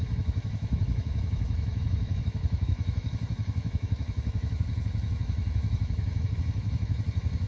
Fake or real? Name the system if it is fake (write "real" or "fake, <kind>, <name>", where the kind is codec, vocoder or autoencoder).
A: fake, autoencoder, DAC-VAE